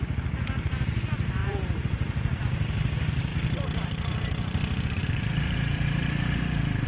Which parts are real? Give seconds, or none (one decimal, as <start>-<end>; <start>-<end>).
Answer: 0.0-1.4; 2.4-3.3